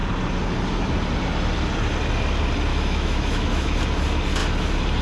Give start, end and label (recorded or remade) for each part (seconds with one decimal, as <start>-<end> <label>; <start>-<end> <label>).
0.0-2.7 recorded; 2.7-3.8 remade; 3.8-5.0 recorded